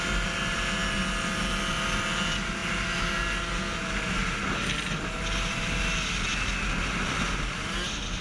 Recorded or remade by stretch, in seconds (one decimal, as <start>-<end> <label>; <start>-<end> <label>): 0.0-8.2 recorded